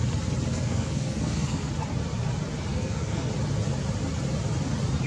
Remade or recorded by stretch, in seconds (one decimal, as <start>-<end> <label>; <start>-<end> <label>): 0.0-0.5 recorded; 0.5-1.7 remade; 1.7-2.7 recorded; 2.7-3.3 remade; 3.3-5.1 recorded